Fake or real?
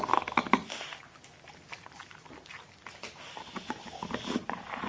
real